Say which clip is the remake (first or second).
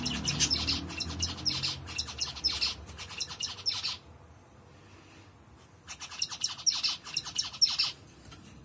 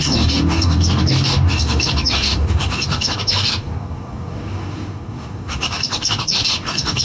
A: second